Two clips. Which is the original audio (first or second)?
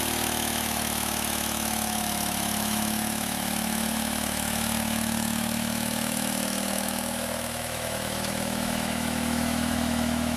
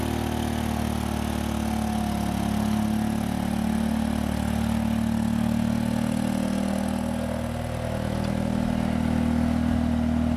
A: second